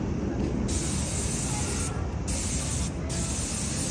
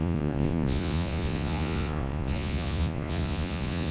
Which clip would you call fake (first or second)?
second